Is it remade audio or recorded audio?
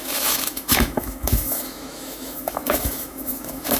remade